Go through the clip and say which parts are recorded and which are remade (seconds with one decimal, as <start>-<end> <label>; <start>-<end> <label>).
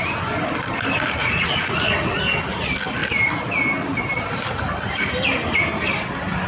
0.0-1.2 recorded; 1.2-2.1 remade; 2.1-6.5 recorded